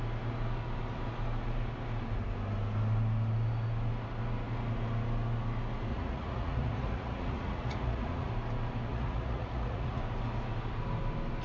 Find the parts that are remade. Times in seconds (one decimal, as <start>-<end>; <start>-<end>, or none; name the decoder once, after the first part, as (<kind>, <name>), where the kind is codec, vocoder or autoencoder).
5.9-8.3 (vocoder, Vocos); 8.9-10.0